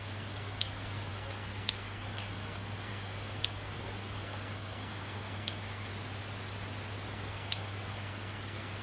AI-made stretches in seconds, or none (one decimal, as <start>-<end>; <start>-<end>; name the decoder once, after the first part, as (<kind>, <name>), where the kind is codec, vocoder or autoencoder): 0.0-5.9 (codec, SNAC); 7.1-8.8